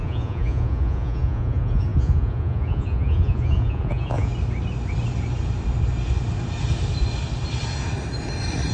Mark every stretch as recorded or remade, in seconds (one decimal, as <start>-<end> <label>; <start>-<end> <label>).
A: 0.0-4.3 remade; 4.3-8.7 recorded